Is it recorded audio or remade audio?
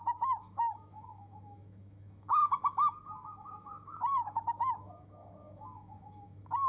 remade